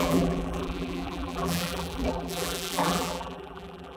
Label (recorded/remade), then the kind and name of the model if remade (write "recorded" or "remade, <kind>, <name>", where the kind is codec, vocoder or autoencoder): remade, vocoder, BigVGAN v2